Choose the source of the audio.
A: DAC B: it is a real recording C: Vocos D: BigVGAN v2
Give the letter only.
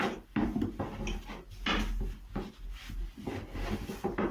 D